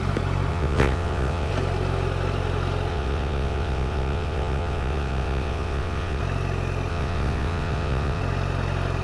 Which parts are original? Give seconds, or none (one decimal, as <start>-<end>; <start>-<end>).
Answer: 0.0-0.5; 1.5-2.9; 6.2-6.9; 8.2-9.0

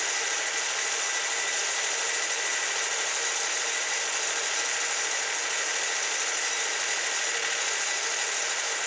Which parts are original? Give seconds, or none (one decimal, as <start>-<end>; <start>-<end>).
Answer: 0.0-8.9

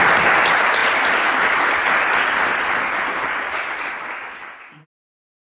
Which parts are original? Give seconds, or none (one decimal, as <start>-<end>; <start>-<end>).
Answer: 0.0-5.5

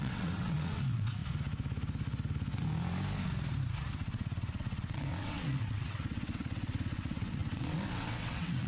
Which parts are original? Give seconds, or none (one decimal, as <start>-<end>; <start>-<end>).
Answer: 1.2-3.9